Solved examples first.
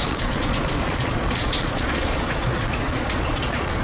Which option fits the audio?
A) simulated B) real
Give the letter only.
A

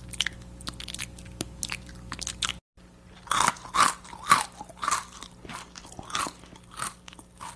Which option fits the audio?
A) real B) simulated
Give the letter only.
A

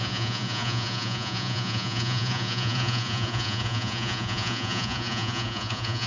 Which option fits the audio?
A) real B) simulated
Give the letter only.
B